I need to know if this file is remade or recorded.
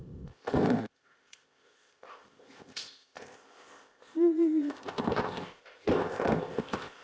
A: remade